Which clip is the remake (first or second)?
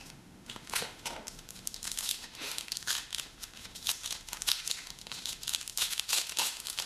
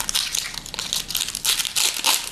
first